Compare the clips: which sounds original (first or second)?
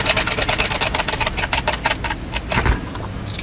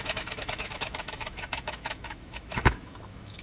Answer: first